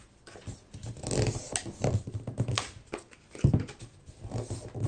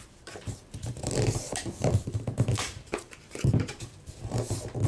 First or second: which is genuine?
first